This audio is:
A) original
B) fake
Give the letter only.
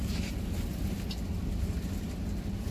A